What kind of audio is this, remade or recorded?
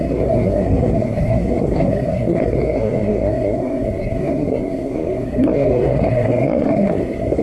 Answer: remade